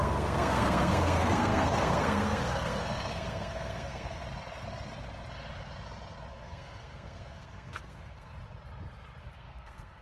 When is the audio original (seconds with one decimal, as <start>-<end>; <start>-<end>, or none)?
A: 4.2-6.3; 8.3-9.2